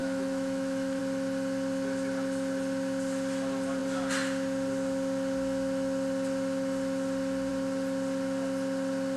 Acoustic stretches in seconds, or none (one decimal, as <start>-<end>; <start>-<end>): 1.0-9.2